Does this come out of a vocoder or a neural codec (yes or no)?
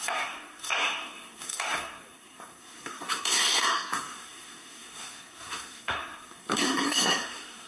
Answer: yes